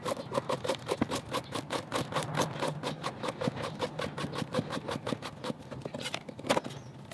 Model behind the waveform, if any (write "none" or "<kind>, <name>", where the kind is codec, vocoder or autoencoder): none